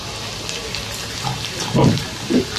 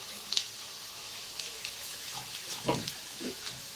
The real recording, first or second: first